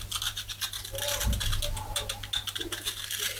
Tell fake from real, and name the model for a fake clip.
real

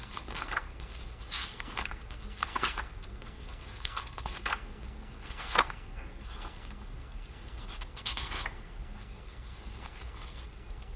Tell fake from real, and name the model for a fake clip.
fake, codec, SNAC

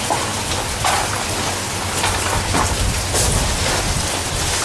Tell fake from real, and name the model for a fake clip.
real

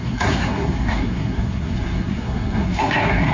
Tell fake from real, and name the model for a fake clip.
fake, codec, SNAC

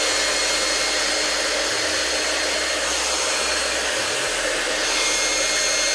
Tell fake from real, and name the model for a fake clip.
real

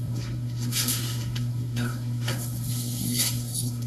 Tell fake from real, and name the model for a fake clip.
fake, codec, SNAC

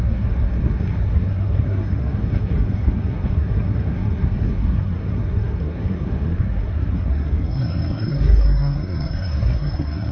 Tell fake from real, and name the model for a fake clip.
fake, codec, SNAC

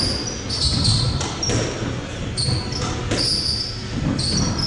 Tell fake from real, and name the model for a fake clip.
real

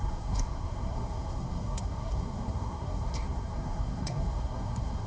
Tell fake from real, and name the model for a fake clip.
fake, codec, SNAC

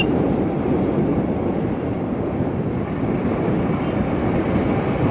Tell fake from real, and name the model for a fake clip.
real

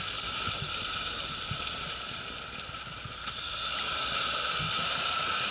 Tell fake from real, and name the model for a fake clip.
real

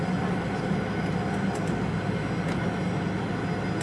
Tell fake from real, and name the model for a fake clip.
real